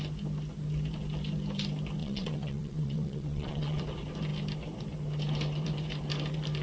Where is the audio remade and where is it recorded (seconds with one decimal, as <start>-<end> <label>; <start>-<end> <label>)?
0.0-2.0 recorded; 2.0-3.8 remade; 3.8-6.6 recorded